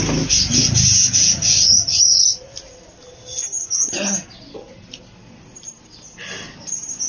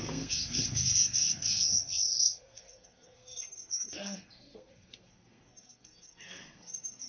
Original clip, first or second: first